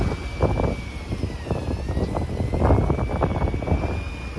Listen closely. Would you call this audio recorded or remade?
recorded